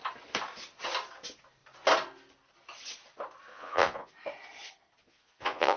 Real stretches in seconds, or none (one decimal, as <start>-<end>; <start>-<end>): 0.0-3.5; 4.1-5.0